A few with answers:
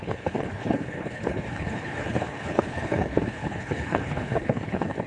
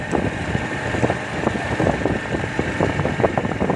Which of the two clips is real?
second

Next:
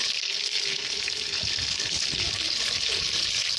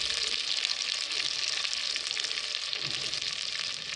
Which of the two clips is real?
second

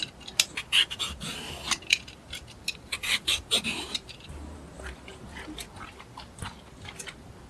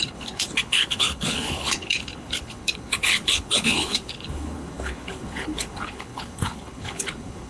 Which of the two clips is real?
first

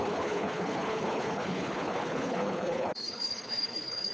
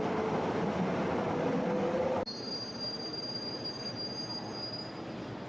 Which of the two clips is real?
second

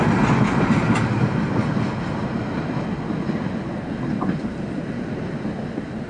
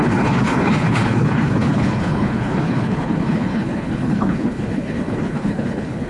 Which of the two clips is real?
first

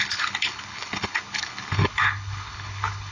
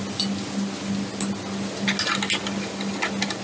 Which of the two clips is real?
second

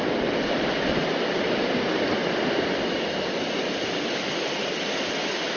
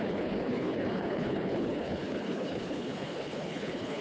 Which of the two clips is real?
first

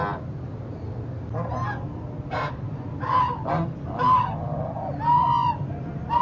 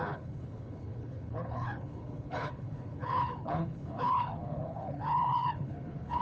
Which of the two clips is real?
first